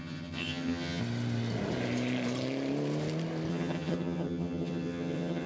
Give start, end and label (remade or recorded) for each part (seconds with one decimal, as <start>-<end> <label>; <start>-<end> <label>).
0.0-1.0 remade; 1.0-3.5 recorded; 3.5-5.5 remade